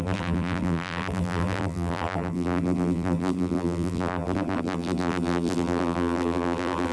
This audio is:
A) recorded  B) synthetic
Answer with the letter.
B